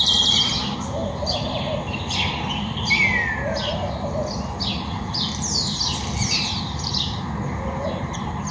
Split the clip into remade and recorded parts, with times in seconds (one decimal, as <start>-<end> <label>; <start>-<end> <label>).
0.0-8.5 recorded